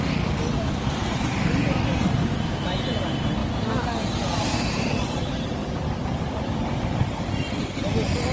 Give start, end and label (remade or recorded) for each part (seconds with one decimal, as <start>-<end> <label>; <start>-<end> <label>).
0.0-8.3 recorded